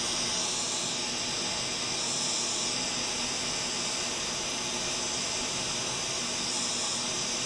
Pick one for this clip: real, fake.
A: real